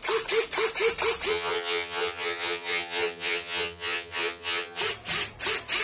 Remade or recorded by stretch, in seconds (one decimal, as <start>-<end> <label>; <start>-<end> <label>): 0.0-1.3 recorded; 1.3-4.8 remade; 4.8-5.8 recorded